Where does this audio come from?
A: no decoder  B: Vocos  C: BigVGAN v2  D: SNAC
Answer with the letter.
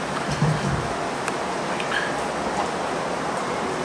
A